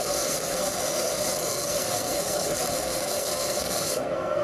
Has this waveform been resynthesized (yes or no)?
yes